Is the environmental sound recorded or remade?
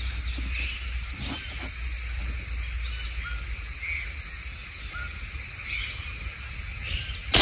recorded